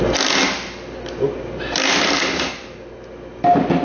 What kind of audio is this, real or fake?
real